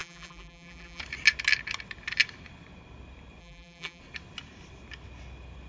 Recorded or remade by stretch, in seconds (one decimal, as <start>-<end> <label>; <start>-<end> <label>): 0.0-1.0 remade; 1.0-3.4 recorded; 3.4-4.0 remade; 4.0-5.7 recorded